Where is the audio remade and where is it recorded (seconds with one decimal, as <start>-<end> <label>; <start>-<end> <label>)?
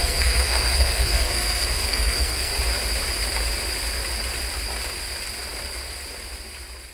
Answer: 0.0-2.5 remade; 2.5-6.9 recorded